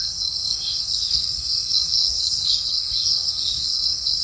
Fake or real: fake